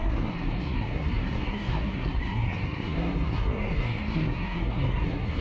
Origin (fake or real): fake